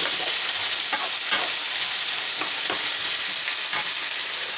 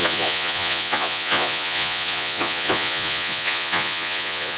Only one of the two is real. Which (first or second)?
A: first